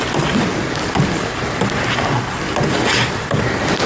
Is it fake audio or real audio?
real